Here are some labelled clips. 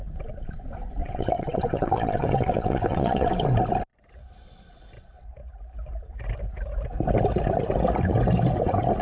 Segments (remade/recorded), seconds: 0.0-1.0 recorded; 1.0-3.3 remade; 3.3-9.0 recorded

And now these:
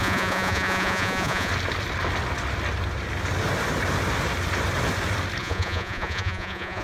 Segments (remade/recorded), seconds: 0.0-1.5 remade; 1.5-5.4 recorded; 5.4-6.8 remade

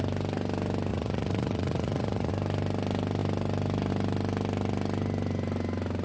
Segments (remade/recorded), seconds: 0.0-0.9 recorded; 0.9-2.3 remade; 2.3-6.0 recorded

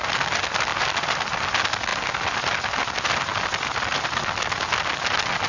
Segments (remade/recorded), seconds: 0.0-5.5 recorded

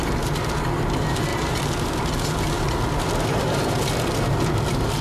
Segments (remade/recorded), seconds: 0.0-5.0 recorded

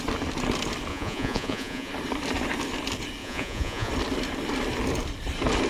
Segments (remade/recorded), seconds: 0.0-0.9 recorded; 0.9-1.9 remade; 1.9-3.2 recorded; 3.2-3.9 remade; 3.9-5.7 recorded

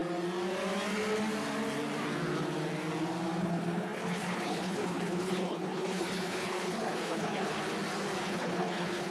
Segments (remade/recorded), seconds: 0.0-3.4 recorded; 3.4-7.6 remade; 7.6-8.2 recorded; 8.2-9.1 remade

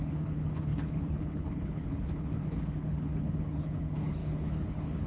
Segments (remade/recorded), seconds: 0.0-5.1 remade